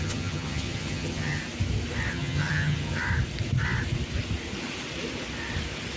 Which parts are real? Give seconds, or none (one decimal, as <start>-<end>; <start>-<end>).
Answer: 1.4-2.1; 3.0-6.0